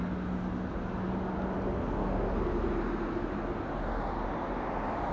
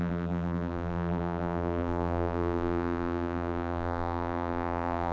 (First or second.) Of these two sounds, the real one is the first